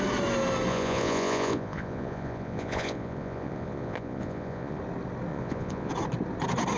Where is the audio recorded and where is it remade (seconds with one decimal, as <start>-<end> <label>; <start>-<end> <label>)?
0.0-0.7 recorded; 0.7-4.8 remade; 4.8-5.3 recorded; 5.3-5.9 remade; 5.9-6.8 recorded